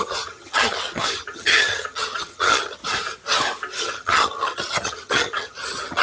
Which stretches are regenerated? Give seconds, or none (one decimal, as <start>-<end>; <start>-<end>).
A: 0.0-2.8; 3.8-6.0